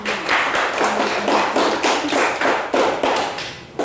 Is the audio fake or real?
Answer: real